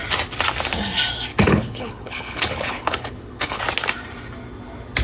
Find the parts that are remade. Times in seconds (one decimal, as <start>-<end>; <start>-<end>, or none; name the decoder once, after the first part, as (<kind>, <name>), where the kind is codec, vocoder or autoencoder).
1.3-3.6 (codec, HILCodec)